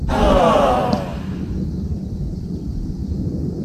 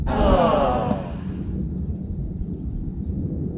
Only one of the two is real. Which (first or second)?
second